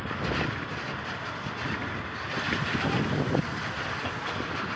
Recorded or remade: recorded